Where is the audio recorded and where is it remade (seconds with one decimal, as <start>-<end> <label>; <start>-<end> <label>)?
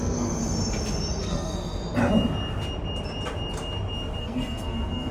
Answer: 0.0-0.4 remade; 0.4-1.2 recorded; 1.2-1.8 remade; 1.8-4.2 recorded; 4.2-5.1 remade